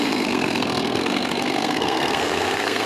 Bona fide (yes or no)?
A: no